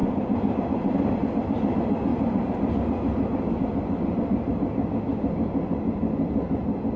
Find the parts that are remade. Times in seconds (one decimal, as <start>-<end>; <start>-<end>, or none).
0.0-1.1